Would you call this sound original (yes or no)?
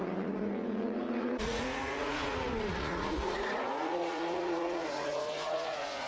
no